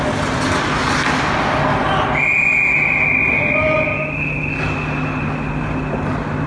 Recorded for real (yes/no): yes